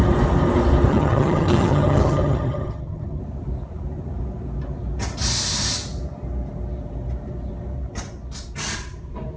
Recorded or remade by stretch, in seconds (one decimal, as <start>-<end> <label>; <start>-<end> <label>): 0.0-0.9 recorded; 0.9-3.2 remade; 3.2-9.4 recorded